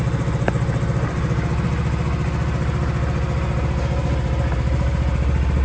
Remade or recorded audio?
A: recorded